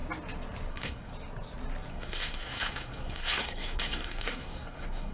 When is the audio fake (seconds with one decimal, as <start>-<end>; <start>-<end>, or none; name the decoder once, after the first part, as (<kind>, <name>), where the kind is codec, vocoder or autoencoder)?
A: 0.7-1.1 (codec, SNAC); 1.9-5.1